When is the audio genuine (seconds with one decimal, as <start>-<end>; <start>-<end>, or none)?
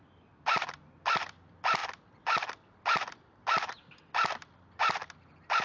0.0-5.6